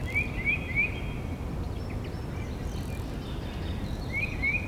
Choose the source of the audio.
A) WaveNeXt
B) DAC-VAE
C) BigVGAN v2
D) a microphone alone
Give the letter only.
D